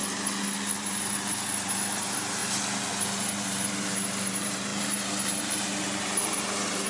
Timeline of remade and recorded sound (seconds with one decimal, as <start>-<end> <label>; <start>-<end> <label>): 0.0-0.8 recorded; 0.8-2.4 remade; 2.4-2.9 recorded; 2.9-6.9 remade